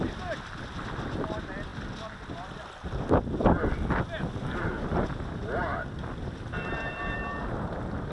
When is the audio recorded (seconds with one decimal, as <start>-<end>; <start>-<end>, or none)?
0.0-8.1